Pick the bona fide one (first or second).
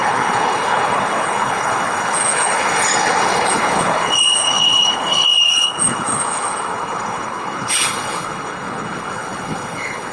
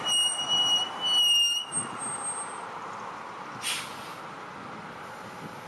second